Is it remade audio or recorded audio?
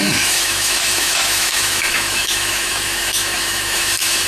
remade